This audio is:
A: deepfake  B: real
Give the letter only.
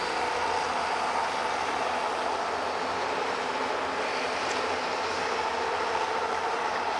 B